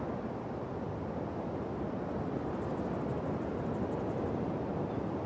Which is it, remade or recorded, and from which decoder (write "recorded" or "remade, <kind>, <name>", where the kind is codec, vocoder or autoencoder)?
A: remade, vocoder, BigVGAN v2